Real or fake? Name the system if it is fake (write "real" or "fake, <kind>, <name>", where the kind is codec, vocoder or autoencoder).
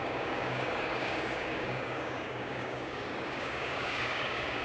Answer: fake, codec, DAC